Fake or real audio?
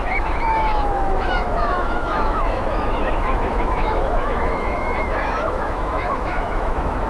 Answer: fake